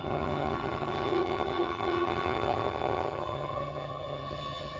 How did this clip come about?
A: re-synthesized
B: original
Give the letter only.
A